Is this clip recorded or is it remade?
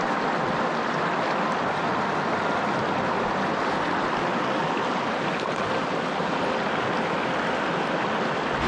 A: recorded